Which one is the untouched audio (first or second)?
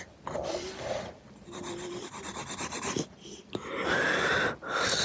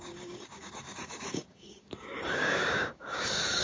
first